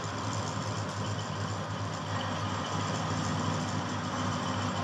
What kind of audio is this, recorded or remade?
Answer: recorded